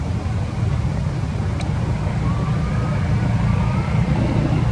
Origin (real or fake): fake